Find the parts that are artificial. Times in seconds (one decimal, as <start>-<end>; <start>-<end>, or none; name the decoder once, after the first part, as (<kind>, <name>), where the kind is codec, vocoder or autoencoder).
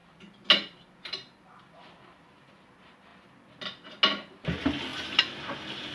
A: none